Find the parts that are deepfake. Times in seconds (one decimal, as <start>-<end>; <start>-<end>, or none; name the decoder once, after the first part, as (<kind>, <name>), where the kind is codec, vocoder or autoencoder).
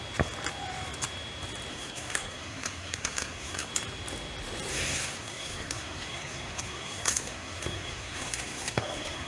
1.7-3.7 (codec, SNAC); 4.7-9.3